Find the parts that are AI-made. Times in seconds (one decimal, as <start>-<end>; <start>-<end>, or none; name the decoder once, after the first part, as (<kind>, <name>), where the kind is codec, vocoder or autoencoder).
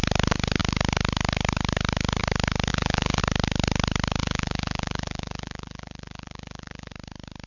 2.7-3.2 (vocoder, BigVGAN v2); 4.2-6.9